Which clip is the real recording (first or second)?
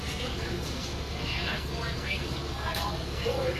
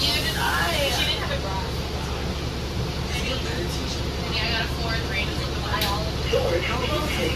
second